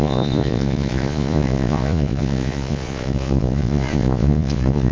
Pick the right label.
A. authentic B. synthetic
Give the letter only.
B